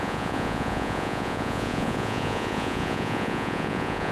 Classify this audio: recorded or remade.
remade